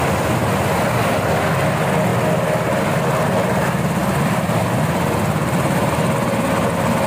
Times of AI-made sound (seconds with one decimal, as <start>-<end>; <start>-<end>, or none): 4.0-5.9